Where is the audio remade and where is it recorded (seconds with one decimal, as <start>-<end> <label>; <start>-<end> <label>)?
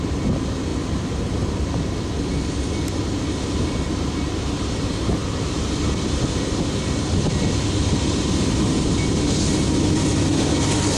0.0-11.0 recorded